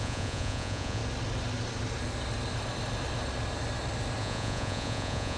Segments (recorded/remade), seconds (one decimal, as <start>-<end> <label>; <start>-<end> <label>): 0.0-1.0 remade; 1.0-4.2 recorded; 4.2-5.4 remade